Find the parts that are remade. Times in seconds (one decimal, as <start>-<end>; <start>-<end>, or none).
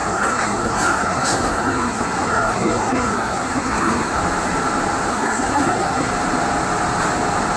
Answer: 0.0-4.2; 5.1-6.1